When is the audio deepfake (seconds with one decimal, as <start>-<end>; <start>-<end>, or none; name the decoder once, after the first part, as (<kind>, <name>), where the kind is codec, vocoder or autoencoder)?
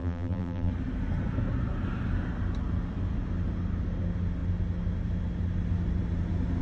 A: 0.0-0.7 (vocoder, BigVGAN v2)